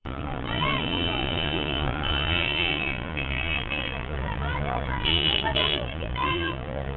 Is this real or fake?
fake